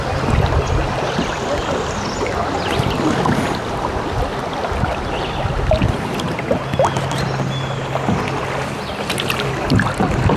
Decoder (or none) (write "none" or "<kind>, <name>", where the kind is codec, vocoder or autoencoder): none